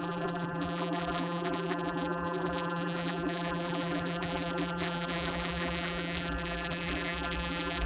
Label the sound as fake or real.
fake